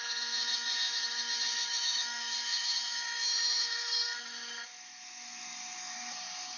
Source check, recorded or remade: remade